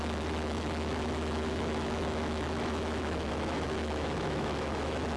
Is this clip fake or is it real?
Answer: fake